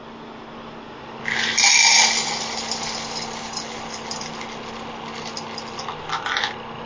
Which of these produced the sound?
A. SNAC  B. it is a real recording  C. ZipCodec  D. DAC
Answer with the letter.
B